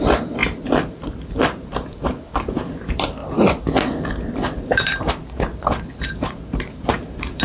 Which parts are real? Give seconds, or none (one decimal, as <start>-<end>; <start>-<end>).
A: 0.4-0.9; 3.2-4.3; 5.5-6.1